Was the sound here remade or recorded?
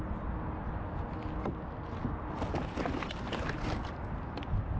recorded